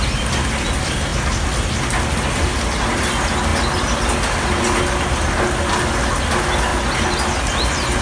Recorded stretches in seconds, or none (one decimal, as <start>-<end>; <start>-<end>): 0.0-8.0